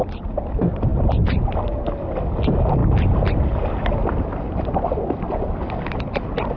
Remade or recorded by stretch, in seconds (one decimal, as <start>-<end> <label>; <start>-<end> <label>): 0.0-6.6 recorded